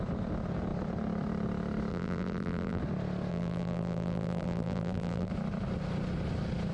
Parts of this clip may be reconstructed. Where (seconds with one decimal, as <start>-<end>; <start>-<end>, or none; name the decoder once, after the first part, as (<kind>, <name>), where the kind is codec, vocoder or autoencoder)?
1.9-2.8 (vocoder, BigVGAN v2); 3.3-5.3